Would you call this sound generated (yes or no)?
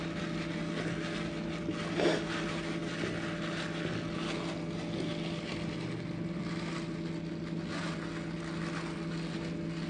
no